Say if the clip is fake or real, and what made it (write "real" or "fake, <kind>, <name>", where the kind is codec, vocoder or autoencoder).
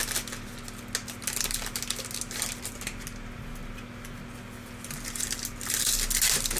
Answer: real